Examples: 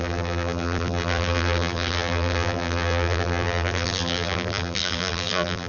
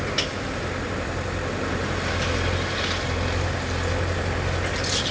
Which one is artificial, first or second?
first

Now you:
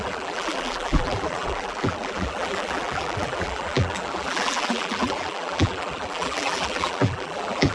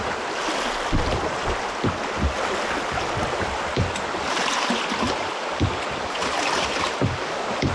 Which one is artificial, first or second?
first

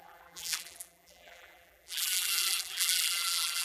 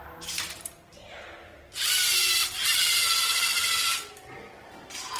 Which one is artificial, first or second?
first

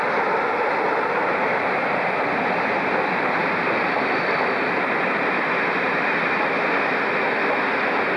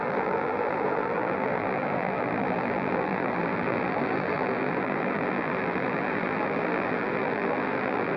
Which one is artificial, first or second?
second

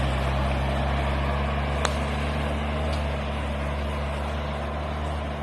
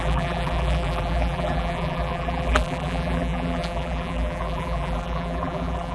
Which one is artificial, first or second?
second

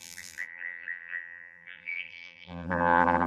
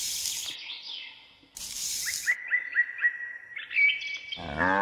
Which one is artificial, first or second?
first